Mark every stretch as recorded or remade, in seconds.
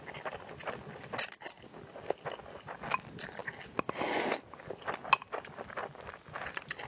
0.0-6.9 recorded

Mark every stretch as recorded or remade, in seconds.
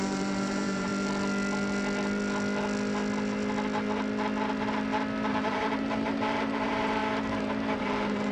0.0-0.9 remade; 0.9-5.3 recorded; 5.3-7.0 remade; 7.0-7.8 recorded; 7.8-8.3 remade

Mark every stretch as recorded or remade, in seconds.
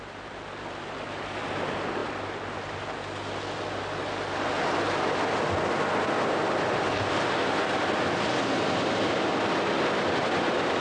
0.0-10.8 recorded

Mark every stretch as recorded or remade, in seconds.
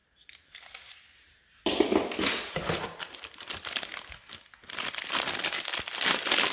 0.0-2.2 remade; 2.2-6.5 recorded